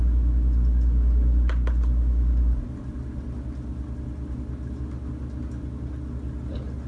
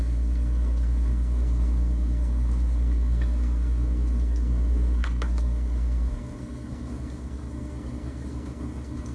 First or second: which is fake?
second